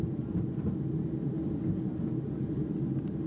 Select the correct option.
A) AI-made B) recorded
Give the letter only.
B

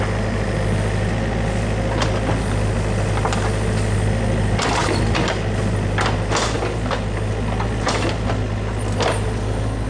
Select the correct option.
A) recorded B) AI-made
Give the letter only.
A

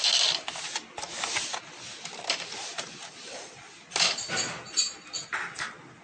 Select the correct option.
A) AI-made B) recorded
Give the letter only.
B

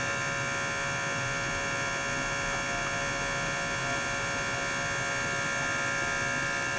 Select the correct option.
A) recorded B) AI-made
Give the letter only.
A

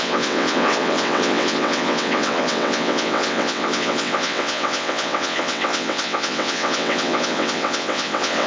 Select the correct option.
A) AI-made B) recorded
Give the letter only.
A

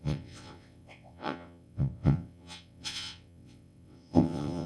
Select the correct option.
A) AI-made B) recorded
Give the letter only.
A